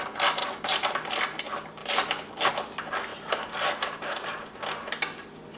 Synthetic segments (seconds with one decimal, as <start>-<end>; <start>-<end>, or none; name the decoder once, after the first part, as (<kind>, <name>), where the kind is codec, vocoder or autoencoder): 0.4-1.4 (vocoder, BigVGAN v2); 1.8-2.5; 3.1-4.6

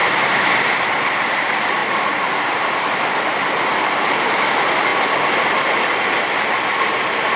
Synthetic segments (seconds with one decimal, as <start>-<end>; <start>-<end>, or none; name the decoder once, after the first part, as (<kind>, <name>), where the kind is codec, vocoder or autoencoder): 0.0-0.9 (vocoder, BigVGAN v2); 1.8-3.2

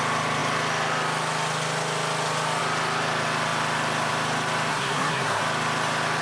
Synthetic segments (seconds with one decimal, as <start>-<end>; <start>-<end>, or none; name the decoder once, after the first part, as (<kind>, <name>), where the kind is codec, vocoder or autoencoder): 4.7-5.4 (codec, SNAC)

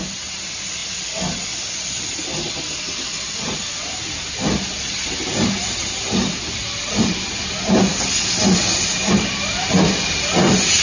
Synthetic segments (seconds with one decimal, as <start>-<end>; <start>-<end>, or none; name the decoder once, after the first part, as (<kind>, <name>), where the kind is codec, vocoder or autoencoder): none

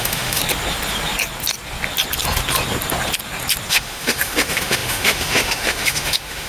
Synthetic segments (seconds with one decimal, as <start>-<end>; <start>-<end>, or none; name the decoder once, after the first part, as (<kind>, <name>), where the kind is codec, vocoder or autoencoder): 0.0-0.4 (autoencoder, DAC-VAE); 3.7-6.5

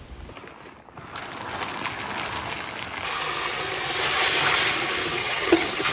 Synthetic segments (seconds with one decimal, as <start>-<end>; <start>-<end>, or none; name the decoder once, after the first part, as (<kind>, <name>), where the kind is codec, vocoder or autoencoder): 5.2-5.9 (vocoder, HiFi-GAN)

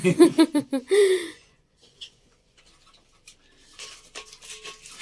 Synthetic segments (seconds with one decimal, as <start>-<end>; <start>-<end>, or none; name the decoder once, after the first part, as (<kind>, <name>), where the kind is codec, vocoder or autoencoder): 0.0-2.6 (vocoder, Vocos)

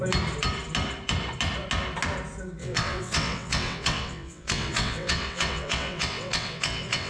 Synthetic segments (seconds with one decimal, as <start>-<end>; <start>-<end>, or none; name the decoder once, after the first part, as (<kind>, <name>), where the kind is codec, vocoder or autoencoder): 2.6-7.1 (vocoder, WaveNeXt)